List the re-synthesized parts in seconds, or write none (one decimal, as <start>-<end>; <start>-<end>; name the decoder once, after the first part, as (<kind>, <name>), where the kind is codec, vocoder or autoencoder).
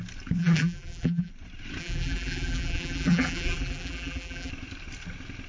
0.4-1.3 (vocoder, BigVGAN v2); 1.8-4.5